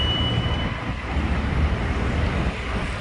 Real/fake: real